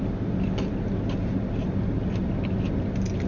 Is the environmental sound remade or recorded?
recorded